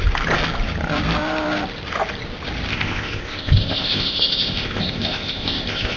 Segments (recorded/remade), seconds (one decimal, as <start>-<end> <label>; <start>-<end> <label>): 0.0-2.7 recorded; 2.7-6.0 remade